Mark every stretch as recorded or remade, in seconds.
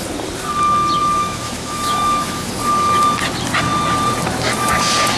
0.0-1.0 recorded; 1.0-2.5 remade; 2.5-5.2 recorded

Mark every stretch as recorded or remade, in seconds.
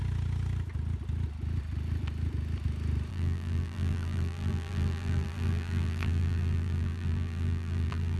0.0-3.1 recorded; 3.1-8.2 remade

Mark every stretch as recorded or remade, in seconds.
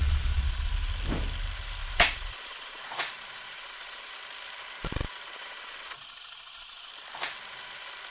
0.0-0.7 remade; 0.7-1.8 recorded; 1.8-4.1 remade; 4.1-5.4 recorded; 5.4-6.9 remade; 6.9-8.1 recorded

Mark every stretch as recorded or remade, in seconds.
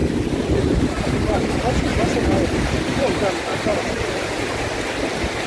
0.0-1.5 remade; 1.5-1.9 recorded; 1.9-3.0 remade; 3.0-3.7 recorded; 3.7-4.6 remade; 4.6-5.5 recorded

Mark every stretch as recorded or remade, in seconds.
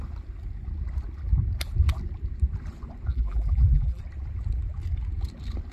0.0-3.1 recorded; 3.1-4.0 remade; 4.0-5.7 recorded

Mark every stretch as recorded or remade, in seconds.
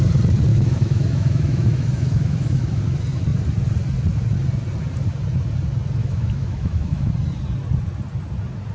0.0-0.5 recorded; 0.5-2.8 remade; 2.8-6.0 recorded; 6.0-7.1 remade; 7.1-8.7 recorded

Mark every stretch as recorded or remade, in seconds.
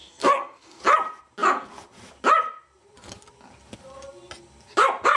0.0-0.8 remade; 0.8-5.2 recorded